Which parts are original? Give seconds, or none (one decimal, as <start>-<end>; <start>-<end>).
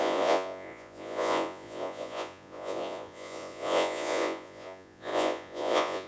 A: none